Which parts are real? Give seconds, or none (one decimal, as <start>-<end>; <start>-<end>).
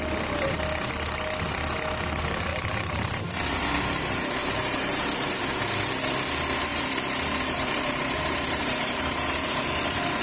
0.0-2.5; 3.2-4.4; 5.4-6.7; 9.7-10.2